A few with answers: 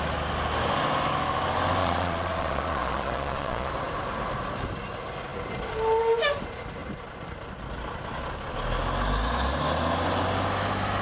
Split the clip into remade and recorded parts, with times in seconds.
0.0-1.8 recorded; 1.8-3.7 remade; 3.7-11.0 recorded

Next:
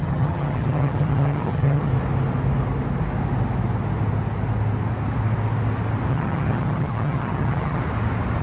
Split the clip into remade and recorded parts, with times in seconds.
0.0-1.9 remade; 1.9-6.1 recorded; 6.1-7.8 remade; 7.8-8.4 recorded

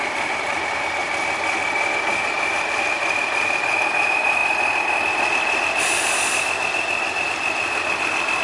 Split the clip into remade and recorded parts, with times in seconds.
0.0-8.4 recorded